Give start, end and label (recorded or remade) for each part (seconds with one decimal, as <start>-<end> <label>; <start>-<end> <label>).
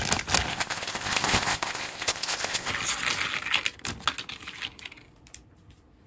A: 0.0-0.5 recorded; 0.5-2.7 remade; 2.7-6.1 recorded